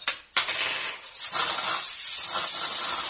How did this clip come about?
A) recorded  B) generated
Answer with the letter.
A